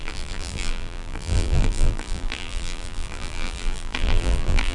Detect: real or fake fake